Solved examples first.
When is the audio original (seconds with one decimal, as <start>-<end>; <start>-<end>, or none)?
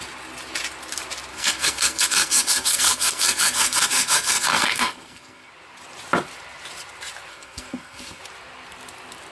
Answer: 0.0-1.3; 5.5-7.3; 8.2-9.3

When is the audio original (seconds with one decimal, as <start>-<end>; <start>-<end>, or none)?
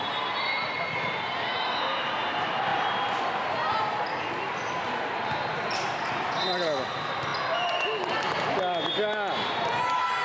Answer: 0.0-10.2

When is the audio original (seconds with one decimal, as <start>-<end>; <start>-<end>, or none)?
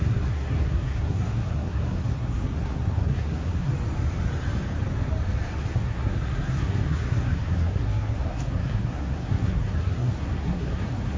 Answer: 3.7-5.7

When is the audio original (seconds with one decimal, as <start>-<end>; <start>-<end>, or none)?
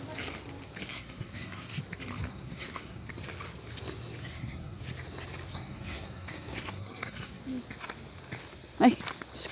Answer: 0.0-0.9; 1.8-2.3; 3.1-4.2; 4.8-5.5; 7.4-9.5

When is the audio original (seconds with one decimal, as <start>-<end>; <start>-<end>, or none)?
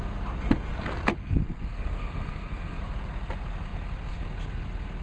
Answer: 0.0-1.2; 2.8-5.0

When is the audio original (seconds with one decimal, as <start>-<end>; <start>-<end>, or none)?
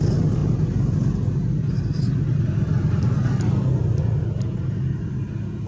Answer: 0.0-5.7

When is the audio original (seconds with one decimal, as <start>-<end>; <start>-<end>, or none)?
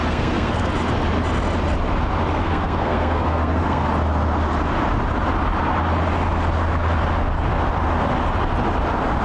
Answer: 0.7-2.3; 3.9-9.2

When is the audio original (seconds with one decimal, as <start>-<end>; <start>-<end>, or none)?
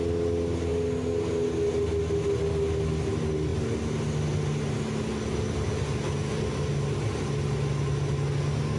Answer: 0.0-8.8